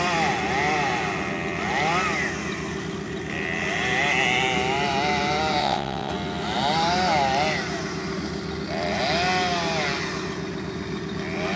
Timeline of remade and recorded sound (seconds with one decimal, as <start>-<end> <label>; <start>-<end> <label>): 0.0-5.6 recorded; 5.6-6.1 remade; 6.1-11.6 recorded